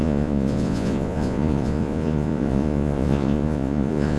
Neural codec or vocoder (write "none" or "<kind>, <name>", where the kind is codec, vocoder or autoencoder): vocoder, Vocos